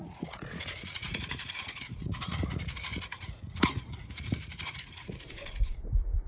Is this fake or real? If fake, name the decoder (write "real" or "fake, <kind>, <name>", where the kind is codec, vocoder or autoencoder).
fake, vocoder, Vocos